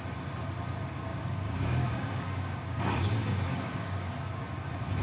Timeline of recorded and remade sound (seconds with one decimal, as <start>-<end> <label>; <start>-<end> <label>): 0.0-1.1 recorded; 1.1-4.1 remade; 4.1-5.0 recorded